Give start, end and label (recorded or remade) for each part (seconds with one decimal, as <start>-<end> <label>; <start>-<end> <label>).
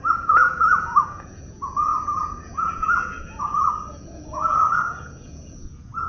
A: 0.0-6.1 remade